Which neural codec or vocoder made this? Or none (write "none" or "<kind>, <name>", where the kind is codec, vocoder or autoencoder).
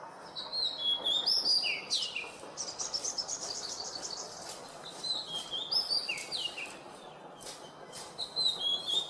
none